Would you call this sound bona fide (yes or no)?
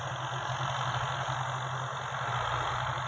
yes